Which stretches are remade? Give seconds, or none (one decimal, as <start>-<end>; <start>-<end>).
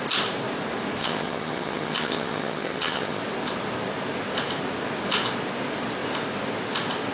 1.0-3.2